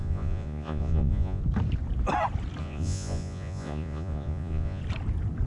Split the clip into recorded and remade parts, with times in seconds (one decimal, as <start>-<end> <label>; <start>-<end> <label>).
0.0-1.4 remade; 1.4-2.6 recorded; 2.6-4.8 remade; 4.8-5.5 recorded